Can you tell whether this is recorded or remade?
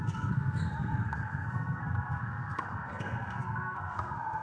remade